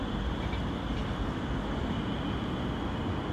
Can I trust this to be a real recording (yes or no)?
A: yes